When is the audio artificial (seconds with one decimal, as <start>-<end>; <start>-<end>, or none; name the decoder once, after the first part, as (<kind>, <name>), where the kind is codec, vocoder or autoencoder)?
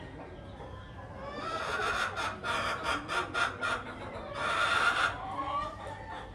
none